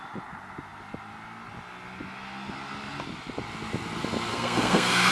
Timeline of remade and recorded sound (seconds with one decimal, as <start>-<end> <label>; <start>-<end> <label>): 0.0-4.3 recorded; 4.3-5.1 remade